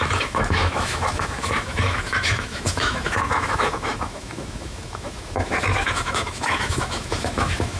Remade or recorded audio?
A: remade